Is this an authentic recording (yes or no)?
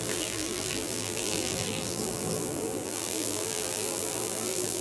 no